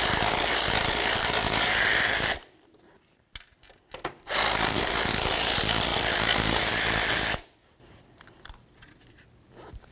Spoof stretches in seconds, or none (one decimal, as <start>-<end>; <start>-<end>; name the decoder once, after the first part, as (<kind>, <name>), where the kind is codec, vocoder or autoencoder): none